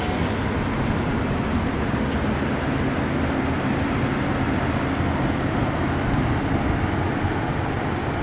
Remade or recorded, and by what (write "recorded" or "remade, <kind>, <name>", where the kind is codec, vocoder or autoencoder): recorded